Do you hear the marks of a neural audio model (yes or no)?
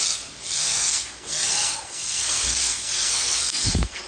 yes